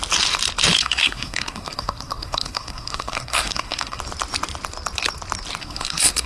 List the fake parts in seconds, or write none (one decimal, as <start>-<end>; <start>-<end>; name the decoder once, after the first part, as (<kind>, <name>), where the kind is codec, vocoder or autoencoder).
0.8-4.0 (codec, SNAC); 5.6-6.3